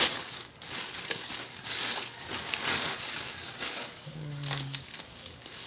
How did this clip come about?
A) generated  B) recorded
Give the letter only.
A